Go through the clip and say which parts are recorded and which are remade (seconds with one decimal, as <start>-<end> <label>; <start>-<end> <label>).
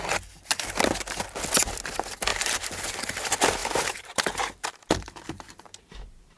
0.0-2.3 recorded; 2.3-2.9 remade; 2.9-3.6 recorded; 3.6-6.4 remade